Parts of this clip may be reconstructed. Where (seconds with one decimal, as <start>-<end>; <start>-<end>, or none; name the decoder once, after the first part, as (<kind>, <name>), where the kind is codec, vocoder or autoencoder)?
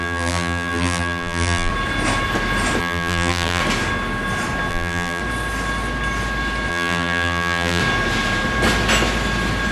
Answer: 0.0-1.7 (vocoder, BigVGAN v2); 2.8-3.6; 4.7-5.2; 6.7-7.8